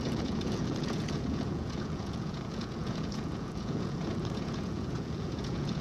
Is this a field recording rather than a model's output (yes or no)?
no